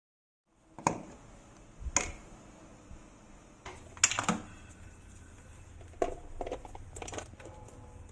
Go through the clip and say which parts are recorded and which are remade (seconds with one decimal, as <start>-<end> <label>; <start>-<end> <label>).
0.0-8.1 recorded